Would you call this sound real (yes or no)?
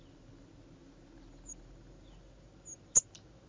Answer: yes